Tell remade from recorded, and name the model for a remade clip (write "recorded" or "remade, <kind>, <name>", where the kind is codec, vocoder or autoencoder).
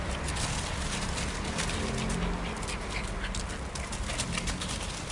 recorded